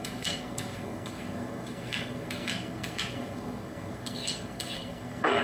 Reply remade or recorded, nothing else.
remade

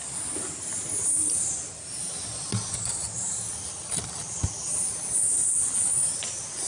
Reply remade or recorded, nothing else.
recorded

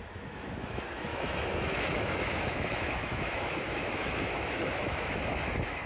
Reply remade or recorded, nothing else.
remade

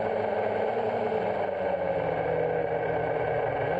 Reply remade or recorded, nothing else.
recorded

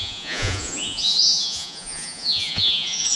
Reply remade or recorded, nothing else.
remade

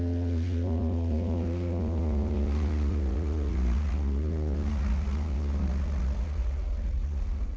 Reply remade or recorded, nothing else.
remade